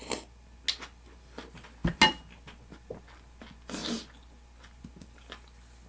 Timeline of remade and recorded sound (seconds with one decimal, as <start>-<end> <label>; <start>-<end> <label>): 0.0-5.9 recorded